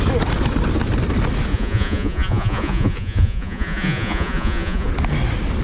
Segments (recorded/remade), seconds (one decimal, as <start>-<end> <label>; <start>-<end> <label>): 0.0-1.5 recorded; 1.5-4.9 remade; 4.9-5.6 recorded